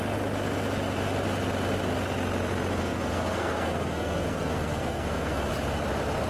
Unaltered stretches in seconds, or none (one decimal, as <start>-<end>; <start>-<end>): 0.0-2.8; 5.5-6.3